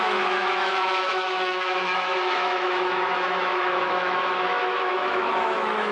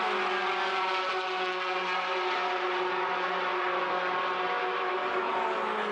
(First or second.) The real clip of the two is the second